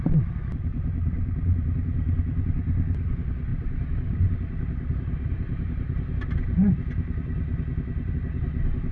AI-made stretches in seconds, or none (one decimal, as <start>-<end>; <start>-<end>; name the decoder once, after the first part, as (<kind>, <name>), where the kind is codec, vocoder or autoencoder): none